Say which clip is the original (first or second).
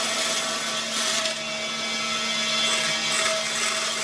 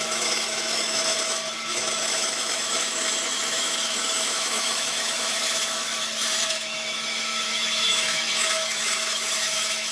first